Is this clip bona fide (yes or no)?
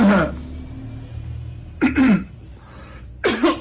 yes